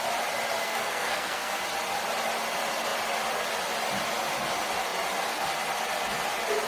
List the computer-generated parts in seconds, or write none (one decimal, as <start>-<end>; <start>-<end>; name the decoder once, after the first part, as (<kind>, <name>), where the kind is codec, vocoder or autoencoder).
0.6-1.6 (codec, SNAC)

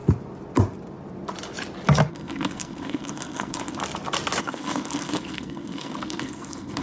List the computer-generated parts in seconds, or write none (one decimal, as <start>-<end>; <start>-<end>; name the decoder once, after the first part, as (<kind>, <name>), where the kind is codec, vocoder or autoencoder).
2.1-3.8 (codec, SNAC); 4.4-6.8

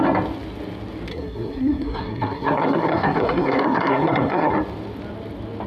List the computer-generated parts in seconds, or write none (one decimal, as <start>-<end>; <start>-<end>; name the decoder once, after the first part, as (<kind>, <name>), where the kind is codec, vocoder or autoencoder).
1.1-4.5 (codec, SNAC)

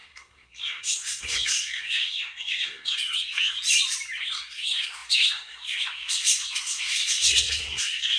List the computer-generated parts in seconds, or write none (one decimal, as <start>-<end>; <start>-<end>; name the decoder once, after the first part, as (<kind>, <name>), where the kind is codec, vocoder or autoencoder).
0.0-3.6 (codec, SNAC); 4.2-8.2

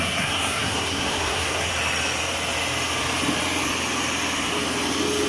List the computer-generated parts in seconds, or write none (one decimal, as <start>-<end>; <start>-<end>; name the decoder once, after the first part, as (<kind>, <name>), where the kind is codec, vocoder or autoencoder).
0.0-1.7 (codec, SNAC)

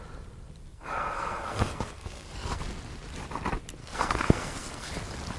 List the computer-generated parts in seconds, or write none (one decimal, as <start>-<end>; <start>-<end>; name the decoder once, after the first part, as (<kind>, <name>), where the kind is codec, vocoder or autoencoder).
0.7-2.6 (codec, SNAC); 3.8-4.9